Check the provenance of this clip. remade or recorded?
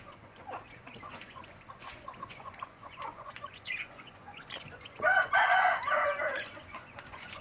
remade